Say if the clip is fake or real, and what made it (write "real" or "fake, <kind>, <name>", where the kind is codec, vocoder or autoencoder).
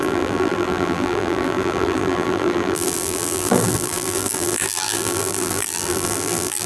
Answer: fake, vocoder, BigVGAN v2